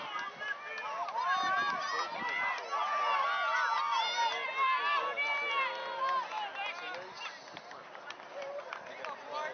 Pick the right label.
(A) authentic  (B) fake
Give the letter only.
A